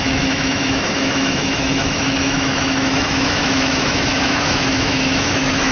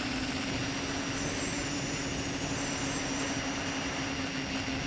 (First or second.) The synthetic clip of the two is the first